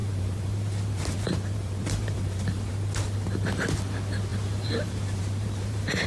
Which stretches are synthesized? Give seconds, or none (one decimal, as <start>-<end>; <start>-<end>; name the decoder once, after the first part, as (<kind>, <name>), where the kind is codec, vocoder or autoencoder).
0.0-2.7 (vocoder, BigVGAN v2); 4.3-6.1